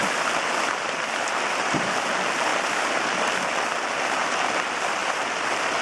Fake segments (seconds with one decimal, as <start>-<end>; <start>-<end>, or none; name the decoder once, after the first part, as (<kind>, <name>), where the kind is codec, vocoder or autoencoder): 0.0-1.9 (vocoder, BigVGAN v2); 2.5-3.9; 5.0-5.8